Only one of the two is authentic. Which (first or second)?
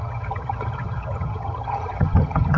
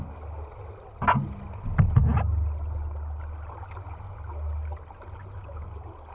second